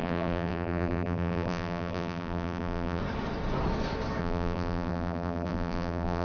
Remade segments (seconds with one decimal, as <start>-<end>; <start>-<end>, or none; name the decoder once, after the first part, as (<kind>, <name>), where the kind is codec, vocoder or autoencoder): 0.0-3.0 (vocoder, BigVGAN v2); 4.2-6.2